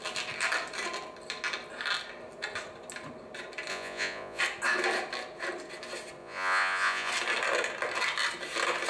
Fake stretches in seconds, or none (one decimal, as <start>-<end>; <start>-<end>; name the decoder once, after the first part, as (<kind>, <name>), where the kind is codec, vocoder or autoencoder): 3.7-4.4 (vocoder, Vocos); 6.2-7.1